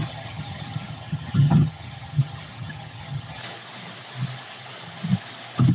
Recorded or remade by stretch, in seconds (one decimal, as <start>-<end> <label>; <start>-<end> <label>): 0.0-3.4 remade; 3.4-5.7 recorded